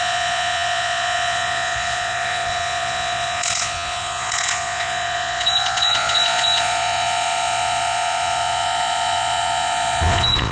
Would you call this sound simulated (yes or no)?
yes